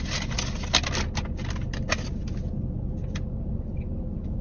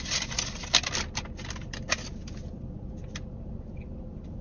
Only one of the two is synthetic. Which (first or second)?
second